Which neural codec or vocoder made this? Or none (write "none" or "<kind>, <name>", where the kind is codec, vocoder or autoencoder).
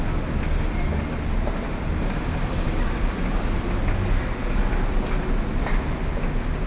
none